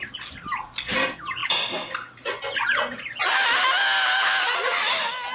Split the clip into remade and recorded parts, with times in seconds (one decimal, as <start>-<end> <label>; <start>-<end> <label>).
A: 0.0-5.3 recorded

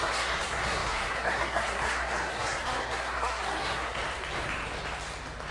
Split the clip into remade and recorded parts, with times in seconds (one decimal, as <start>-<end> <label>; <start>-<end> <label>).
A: 0.0-4.0 remade; 4.0-5.5 recorded